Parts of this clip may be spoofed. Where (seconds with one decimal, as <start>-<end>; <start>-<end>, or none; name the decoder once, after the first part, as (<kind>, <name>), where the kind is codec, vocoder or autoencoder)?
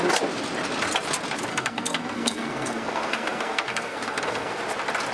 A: 1.5-4.6 (codec, SNAC)